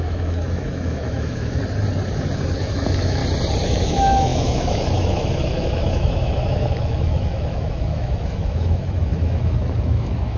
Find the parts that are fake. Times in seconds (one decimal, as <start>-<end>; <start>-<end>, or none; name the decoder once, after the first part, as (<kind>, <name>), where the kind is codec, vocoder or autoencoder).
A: 0.0-1.6 (autoencoder, DAC-VAE); 2.6-3.2; 3.7-10.4